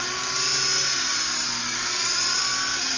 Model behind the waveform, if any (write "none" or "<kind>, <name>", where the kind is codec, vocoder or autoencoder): none